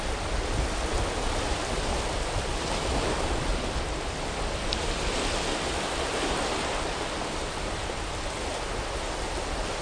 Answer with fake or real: real